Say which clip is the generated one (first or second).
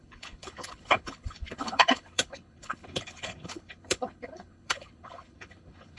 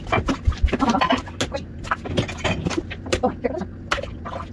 first